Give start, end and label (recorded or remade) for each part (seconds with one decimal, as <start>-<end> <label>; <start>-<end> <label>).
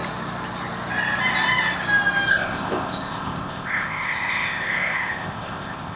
0.0-2.3 recorded; 2.3-6.0 remade